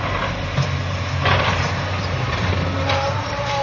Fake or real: fake